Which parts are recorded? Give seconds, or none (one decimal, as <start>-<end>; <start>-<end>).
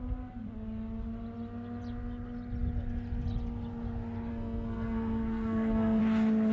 0.0-4.3; 6.0-6.5